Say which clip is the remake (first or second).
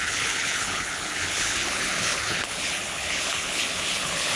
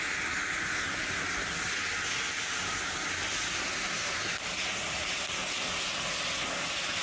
first